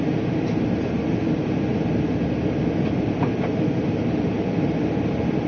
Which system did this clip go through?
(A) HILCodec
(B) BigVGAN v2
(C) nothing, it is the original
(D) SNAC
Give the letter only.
C